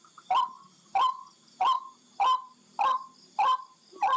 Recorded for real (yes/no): yes